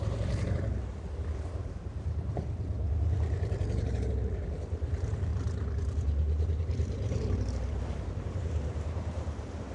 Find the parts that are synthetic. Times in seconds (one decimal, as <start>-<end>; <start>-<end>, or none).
0.0-9.7